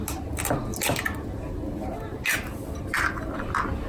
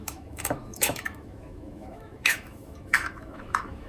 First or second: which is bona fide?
first